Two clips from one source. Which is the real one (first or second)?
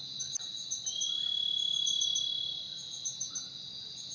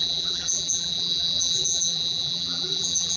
first